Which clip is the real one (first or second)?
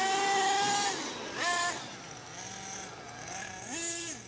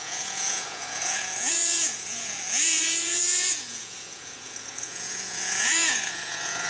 first